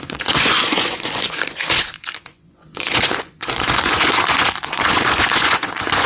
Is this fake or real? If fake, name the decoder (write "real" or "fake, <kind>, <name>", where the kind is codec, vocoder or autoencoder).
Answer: fake, vocoder, Vocos